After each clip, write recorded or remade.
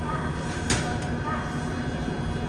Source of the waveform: recorded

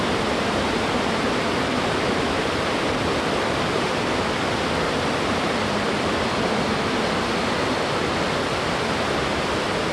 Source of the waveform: remade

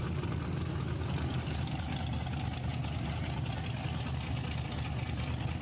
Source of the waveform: recorded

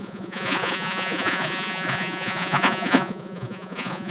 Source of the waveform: remade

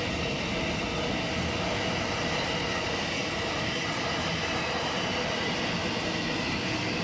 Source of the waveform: recorded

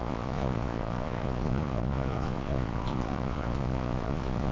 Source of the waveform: remade